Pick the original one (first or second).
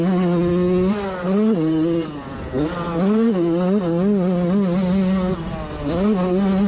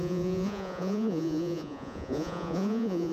first